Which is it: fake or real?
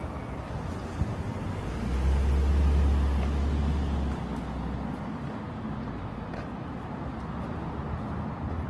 real